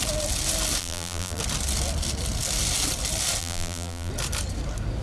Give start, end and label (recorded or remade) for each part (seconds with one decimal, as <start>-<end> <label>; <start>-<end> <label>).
0.0-0.8 recorded; 0.8-1.4 remade; 1.4-3.4 recorded; 3.4-4.1 remade; 4.1-5.0 recorded